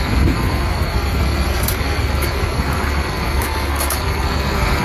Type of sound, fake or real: fake